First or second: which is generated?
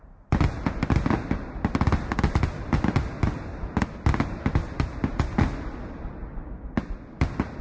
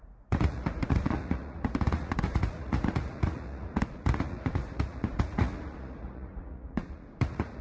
second